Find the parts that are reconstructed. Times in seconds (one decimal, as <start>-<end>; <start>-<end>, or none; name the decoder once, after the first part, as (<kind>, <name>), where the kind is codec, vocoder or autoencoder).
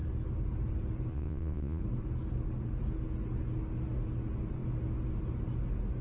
1.1-1.8 (vocoder, Vocos)